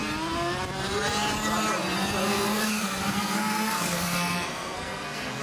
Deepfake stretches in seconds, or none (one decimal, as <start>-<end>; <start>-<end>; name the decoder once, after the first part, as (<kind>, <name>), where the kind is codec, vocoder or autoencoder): 2.2-5.4 (codec, SNAC)